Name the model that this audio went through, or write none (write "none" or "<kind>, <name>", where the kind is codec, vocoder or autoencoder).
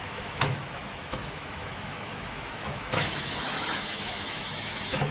autoencoder, DAC-VAE